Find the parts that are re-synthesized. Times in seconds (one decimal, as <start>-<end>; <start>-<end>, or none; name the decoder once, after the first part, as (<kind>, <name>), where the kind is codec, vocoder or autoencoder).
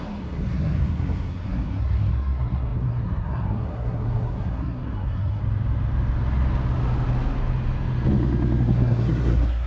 0.0-5.4 (codec, SNAC); 8.6-9.7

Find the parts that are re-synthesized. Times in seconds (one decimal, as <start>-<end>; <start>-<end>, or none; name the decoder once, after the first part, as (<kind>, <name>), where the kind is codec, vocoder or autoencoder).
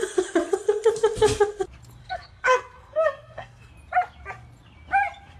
2.0-3.7 (codec, SNAC)